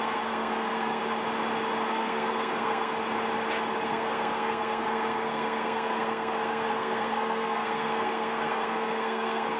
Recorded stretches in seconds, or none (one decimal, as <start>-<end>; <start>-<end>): 1.0-1.9; 2.9-3.8

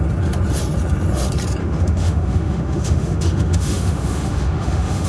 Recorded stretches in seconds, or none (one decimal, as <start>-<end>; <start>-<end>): 0.0-1.6

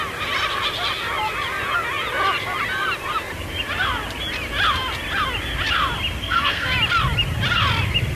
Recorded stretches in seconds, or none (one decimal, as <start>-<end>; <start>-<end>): 0.0-6.2; 6.7-8.2